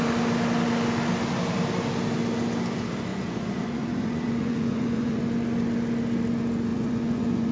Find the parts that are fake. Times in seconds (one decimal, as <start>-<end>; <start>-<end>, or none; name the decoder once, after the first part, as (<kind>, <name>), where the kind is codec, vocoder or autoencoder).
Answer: 3.1-5.2 (vocoder, Vocos); 6.7-7.5